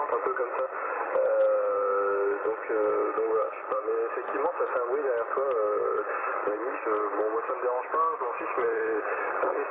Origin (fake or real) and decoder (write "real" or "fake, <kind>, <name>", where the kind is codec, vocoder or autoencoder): real